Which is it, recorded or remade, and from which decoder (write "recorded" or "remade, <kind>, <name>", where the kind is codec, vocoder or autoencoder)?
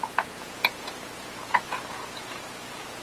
remade, vocoder, Vocos